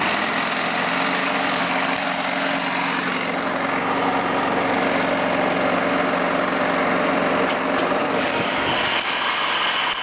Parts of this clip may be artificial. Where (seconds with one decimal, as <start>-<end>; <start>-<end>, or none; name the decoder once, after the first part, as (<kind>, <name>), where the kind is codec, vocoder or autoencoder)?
1.2-2.0 (codec, DAC); 8.0-8.7